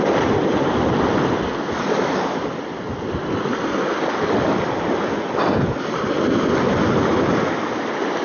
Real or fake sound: real